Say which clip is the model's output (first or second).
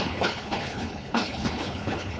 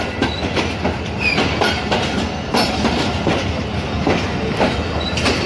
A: first